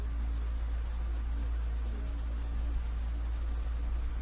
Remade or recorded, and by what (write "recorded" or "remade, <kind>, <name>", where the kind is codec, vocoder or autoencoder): recorded